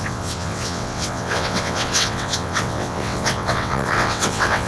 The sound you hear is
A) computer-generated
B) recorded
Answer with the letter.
A